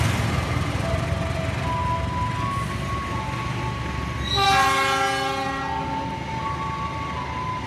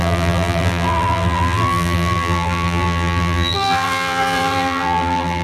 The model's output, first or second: second